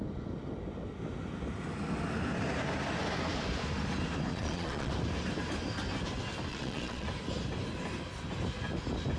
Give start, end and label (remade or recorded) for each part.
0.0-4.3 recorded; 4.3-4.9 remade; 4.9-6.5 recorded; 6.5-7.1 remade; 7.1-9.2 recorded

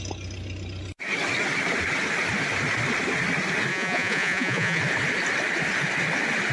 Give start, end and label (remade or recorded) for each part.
0.0-3.7 recorded; 3.7-4.8 remade; 4.8-6.5 recorded

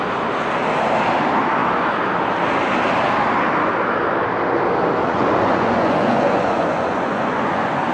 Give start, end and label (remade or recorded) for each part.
0.0-5.0 recorded; 5.0-7.9 remade